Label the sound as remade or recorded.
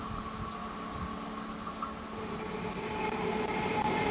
recorded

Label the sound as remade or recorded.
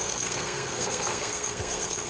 remade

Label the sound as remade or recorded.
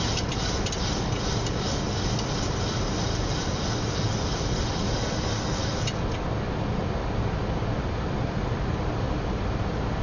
recorded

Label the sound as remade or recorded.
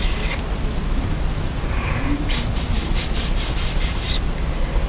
recorded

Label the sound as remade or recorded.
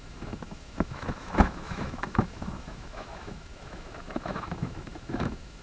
remade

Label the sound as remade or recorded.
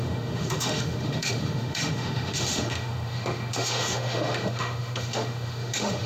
remade